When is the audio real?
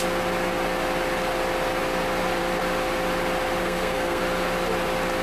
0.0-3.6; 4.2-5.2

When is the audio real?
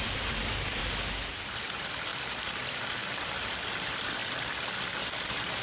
0.8-1.6; 2.1-2.7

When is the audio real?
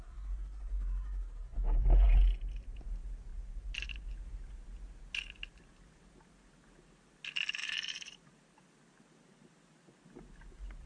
0.0-3.3; 4.1-7.6; 8.6-10.9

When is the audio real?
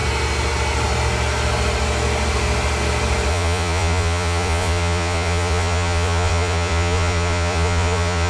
0.0-3.3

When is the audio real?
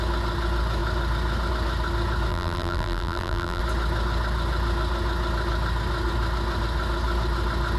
0.0-2.3; 3.6-7.8